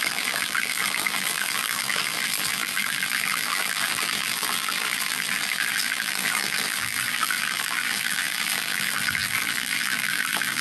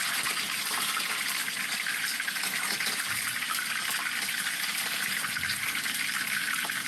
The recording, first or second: second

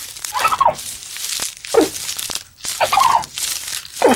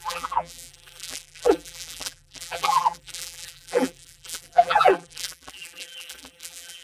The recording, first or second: first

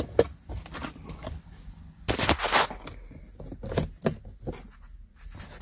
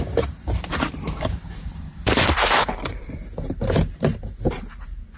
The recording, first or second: first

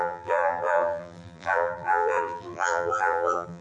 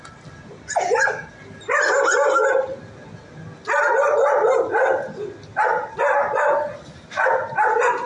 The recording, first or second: second